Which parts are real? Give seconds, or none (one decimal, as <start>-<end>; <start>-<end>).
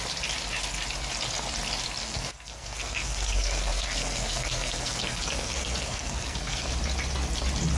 0.0-2.0; 6.7-7.8